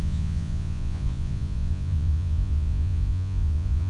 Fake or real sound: fake